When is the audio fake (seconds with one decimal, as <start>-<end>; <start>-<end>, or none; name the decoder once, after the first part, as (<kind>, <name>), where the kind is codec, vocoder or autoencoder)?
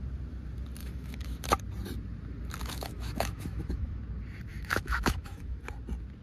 0.8-1.4 (autoencoder, DAC-VAE); 2.6-4.0; 4.5-5.6